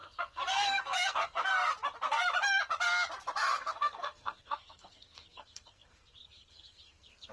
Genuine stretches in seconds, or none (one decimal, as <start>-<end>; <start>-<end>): 1.5-3.5